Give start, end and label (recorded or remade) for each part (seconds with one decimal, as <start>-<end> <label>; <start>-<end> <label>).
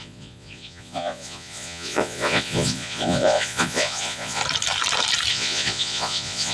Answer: 0.0-4.4 remade; 4.4-5.3 recorded; 5.3-6.5 remade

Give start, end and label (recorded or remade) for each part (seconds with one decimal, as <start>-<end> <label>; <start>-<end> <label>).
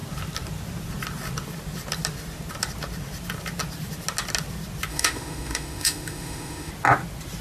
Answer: 0.0-4.9 recorded; 4.9-6.7 remade; 6.7-7.4 recorded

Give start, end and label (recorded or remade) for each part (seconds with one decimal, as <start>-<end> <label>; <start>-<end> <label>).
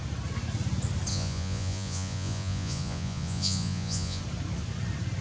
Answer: 0.0-1.1 recorded; 1.1-4.2 remade; 4.2-5.2 recorded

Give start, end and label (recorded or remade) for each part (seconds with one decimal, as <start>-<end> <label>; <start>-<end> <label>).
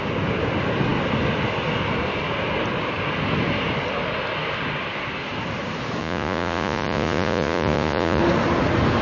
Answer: 0.0-6.0 recorded; 6.0-8.2 remade; 8.2-9.0 recorded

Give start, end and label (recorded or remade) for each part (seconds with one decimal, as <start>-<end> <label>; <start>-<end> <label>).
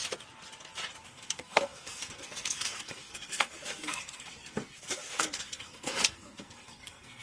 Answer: 0.0-1.0 recorded; 1.0-7.2 remade